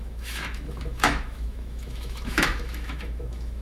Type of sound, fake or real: fake